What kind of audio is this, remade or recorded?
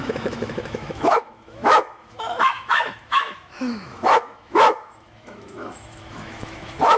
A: remade